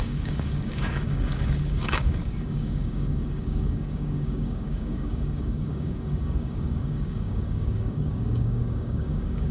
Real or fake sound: fake